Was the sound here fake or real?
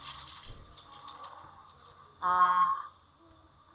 real